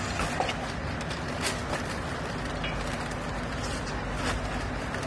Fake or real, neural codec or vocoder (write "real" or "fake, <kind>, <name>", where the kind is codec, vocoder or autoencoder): real